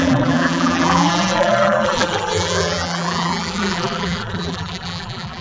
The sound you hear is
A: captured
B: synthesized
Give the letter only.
B